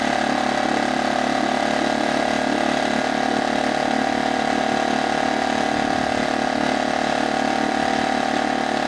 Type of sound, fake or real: real